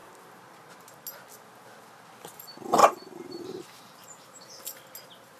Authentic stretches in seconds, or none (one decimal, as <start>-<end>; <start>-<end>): 0.0-2.8; 4.6-5.4